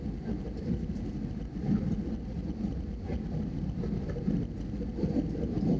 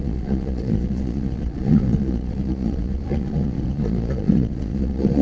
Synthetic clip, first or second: second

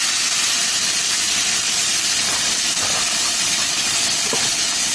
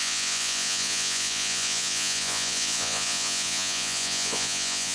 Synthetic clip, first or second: second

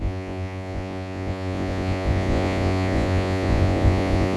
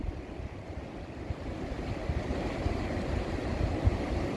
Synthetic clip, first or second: first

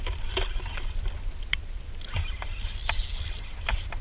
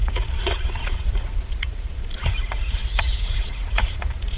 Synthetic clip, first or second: second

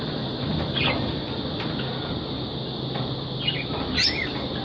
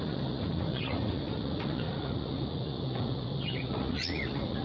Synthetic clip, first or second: second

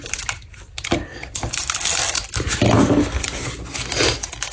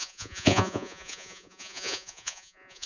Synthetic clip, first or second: second